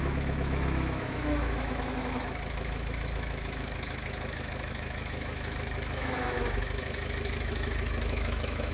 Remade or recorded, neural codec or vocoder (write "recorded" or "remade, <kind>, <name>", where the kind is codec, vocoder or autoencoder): remade, autoencoder, DAC-VAE